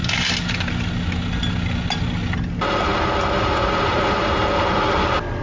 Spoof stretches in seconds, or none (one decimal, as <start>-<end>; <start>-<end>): 2.9-4.3